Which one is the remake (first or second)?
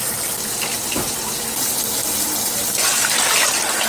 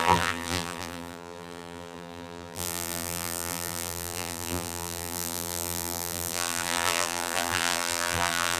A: second